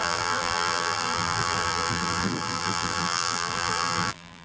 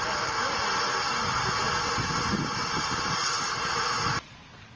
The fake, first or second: first